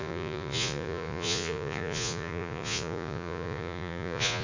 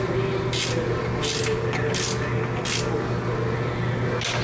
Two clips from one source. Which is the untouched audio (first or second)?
second